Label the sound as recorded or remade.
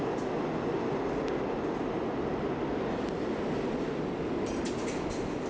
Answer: recorded